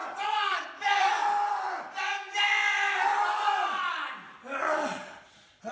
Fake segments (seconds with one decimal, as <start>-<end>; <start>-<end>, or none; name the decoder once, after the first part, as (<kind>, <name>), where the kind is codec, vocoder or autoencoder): 0.0-1.2 (vocoder, Vocos); 4.6-5.7